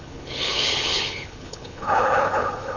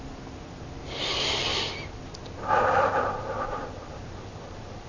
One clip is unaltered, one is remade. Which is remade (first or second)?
first